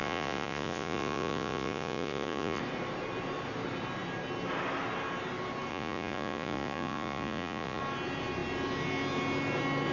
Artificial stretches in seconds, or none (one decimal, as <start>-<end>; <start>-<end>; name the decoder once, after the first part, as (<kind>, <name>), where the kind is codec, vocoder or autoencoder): 0.0-2.6 (vocoder, Vocos); 5.7-7.8